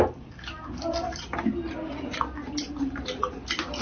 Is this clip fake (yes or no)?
no